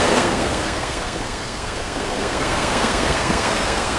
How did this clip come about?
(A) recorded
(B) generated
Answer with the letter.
B